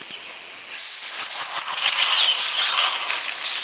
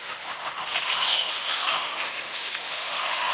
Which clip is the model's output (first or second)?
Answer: second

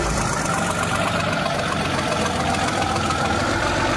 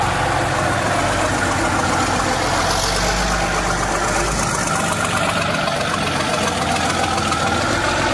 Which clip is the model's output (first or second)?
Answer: first